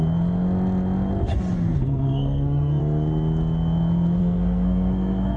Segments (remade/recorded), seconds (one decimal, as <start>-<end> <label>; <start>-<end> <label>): 0.0-1.7 recorded; 1.7-2.8 remade; 2.8-4.2 recorded; 4.2-5.4 remade